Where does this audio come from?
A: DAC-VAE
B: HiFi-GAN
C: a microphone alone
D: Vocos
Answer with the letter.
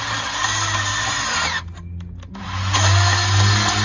C